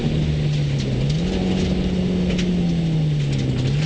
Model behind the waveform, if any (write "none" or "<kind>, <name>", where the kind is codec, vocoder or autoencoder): none